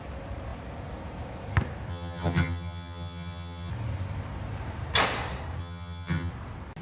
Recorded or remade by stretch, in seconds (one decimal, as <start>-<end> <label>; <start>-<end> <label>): 0.0-1.9 recorded; 1.9-3.7 remade; 3.7-5.6 recorded; 5.6-6.3 remade; 6.3-6.8 recorded